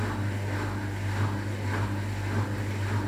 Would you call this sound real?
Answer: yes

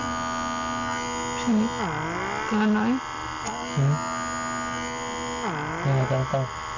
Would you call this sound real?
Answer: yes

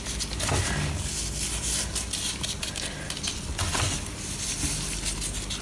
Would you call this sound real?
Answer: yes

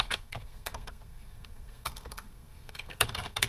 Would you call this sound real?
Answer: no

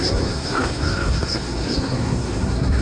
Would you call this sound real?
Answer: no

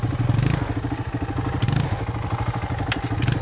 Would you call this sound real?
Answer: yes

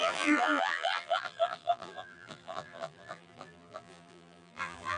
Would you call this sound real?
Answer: no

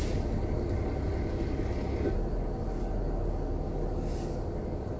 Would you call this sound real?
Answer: yes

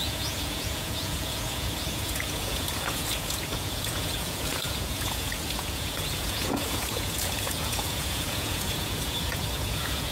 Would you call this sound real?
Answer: no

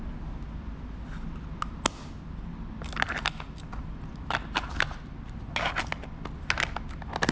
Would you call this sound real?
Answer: yes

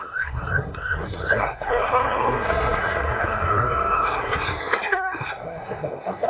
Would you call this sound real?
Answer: no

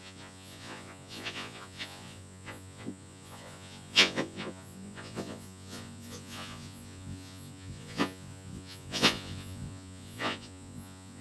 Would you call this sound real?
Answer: no